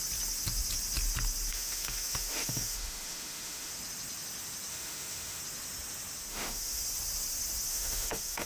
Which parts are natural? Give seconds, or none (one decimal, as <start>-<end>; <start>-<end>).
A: 0.0-1.5; 3.7-4.7; 5.4-6.3; 6.8-7.7